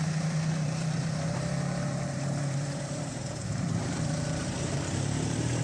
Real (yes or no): no